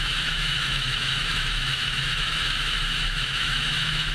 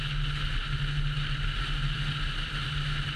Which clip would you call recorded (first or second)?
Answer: second